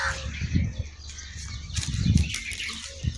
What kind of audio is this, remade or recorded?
recorded